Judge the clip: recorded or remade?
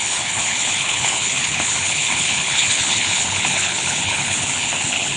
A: remade